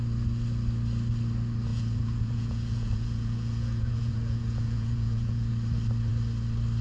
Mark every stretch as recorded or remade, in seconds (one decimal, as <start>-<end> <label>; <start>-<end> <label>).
0.0-1.7 recorded; 1.7-5.5 remade; 5.5-6.8 recorded